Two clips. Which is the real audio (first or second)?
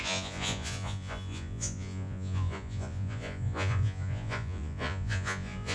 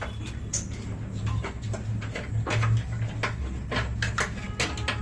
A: second